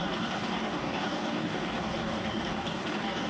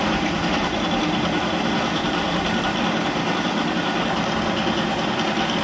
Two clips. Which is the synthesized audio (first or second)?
first